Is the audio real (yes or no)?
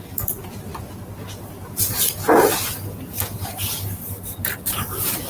yes